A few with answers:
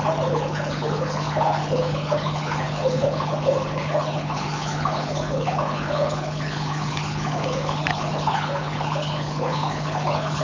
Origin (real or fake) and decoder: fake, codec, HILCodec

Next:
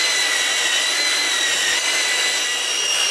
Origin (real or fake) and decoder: real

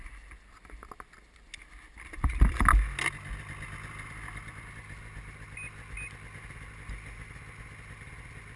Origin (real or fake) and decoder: real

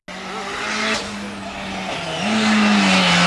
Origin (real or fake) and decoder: real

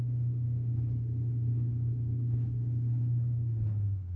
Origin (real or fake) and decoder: fake, codec, HILCodec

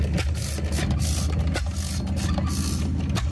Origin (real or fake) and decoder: real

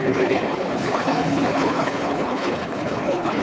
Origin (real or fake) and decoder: fake, codec, HILCodec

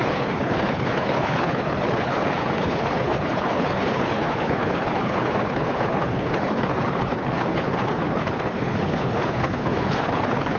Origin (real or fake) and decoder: fake, codec, HILCodec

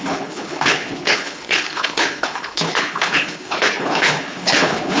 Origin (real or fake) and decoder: fake, codec, HILCodec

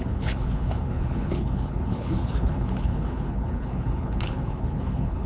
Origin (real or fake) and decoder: fake, codec, HILCodec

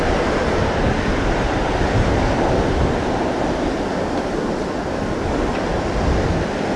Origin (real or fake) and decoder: real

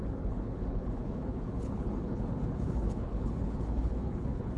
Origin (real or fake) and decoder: fake, codec, HILCodec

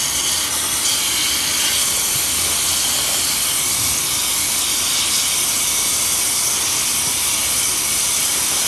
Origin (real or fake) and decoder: real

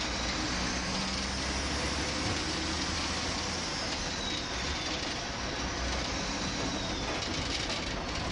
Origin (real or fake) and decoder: real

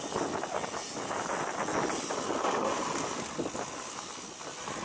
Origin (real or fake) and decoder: real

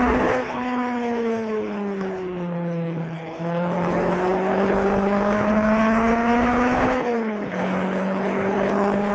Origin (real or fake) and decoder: fake, codec, HILCodec